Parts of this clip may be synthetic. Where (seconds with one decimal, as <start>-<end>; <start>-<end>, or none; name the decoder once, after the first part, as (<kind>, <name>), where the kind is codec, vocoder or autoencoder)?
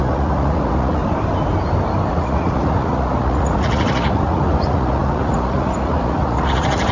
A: 0.0-1.0 (vocoder, Vocos); 2.1-6.9